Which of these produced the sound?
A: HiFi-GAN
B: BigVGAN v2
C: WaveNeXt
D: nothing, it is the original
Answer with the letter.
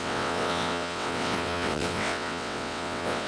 C